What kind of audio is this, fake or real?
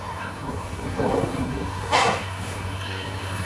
fake